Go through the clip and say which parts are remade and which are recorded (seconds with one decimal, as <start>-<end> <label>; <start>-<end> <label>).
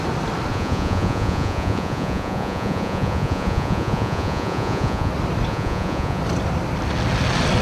0.0-0.5 recorded; 0.5-5.1 remade; 5.1-5.5 recorded; 5.5-6.2 remade; 6.2-7.6 recorded